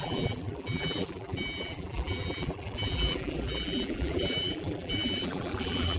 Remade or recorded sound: remade